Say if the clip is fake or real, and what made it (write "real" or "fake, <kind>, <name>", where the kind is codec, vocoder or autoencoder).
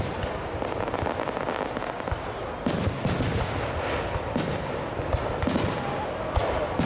real